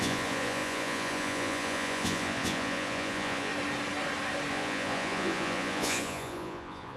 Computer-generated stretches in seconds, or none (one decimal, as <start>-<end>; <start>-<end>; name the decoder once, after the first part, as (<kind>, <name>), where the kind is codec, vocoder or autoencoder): 0.0-3.5 (vocoder, Vocos); 4.5-7.0